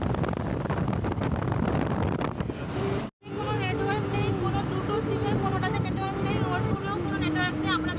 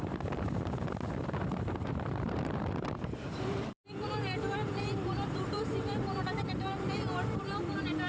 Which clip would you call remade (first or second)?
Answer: second